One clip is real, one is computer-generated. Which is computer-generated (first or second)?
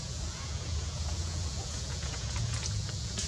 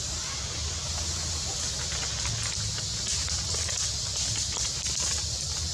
first